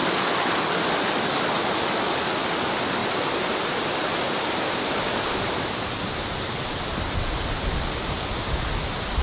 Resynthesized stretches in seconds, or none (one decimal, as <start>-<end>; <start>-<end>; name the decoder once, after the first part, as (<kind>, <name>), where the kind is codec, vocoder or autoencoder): 3.0-6.7 (vocoder, BigVGAN v2)